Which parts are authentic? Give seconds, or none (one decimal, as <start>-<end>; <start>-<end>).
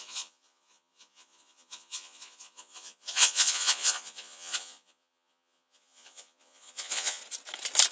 7.2-7.9